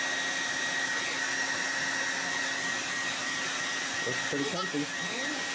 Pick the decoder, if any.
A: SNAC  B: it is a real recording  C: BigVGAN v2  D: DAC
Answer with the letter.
B